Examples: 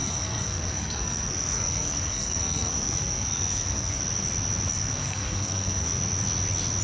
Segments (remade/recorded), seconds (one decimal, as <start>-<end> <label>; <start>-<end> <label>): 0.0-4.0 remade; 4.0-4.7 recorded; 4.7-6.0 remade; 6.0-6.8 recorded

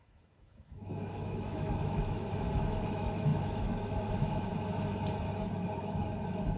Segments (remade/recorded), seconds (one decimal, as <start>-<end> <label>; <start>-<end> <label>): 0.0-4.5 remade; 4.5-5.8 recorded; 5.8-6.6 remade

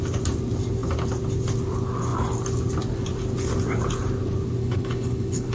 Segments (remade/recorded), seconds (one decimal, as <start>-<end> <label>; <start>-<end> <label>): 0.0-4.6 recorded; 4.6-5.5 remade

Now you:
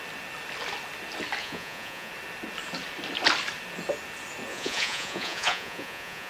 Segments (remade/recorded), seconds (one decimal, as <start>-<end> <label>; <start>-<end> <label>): 0.0-1.4 recorded; 1.4-2.1 remade; 2.1-4.5 recorded; 4.5-6.3 remade